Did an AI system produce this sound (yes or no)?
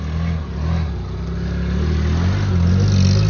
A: no